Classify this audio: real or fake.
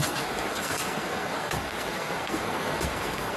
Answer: fake